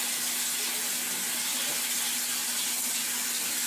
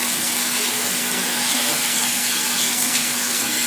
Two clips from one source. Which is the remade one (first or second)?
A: second